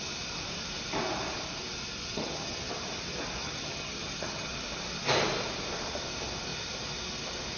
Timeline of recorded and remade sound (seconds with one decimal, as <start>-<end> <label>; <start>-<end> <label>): 0.0-2.0 recorded; 2.0-2.7 remade; 2.7-3.4 recorded; 3.4-4.5 remade; 4.5-7.6 recorded